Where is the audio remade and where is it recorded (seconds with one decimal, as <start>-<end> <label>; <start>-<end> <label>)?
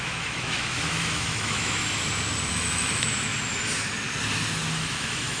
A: 0.0-1.8 remade; 1.8-2.5 recorded; 2.5-3.3 remade; 3.3-4.7 recorded; 4.7-5.4 remade